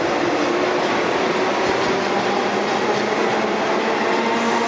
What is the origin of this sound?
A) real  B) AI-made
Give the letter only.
A